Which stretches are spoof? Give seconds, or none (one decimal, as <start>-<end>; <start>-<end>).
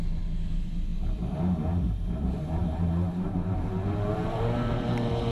0.0-0.9; 1.8-5.3